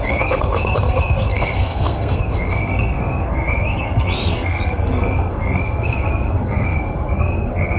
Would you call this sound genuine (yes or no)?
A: no